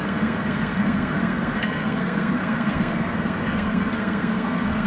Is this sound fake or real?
fake